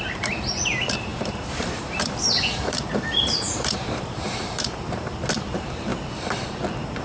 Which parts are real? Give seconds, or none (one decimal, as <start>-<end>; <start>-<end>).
5.9-7.0